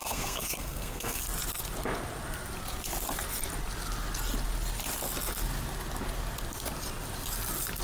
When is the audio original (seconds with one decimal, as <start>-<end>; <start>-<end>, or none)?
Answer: 1.2-7.8